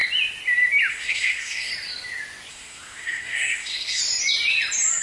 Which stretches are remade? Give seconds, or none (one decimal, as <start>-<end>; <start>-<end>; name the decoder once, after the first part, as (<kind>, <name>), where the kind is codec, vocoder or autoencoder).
0.9-1.7 (codec, SNAC); 2.5-4.0